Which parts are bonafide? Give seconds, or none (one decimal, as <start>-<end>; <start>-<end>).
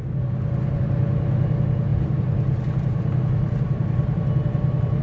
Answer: 0.0-1.9